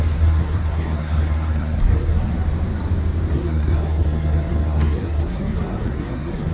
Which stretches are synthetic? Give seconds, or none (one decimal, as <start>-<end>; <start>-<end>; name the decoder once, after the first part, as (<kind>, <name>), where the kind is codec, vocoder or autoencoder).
0.0-2.3 (codec, SNAC); 3.3-6.5